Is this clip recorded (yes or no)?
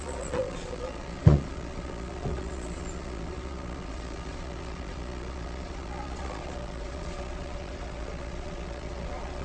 no